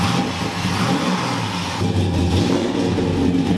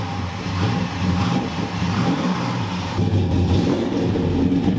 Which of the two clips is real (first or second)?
first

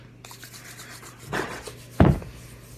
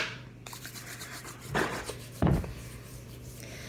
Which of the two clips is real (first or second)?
first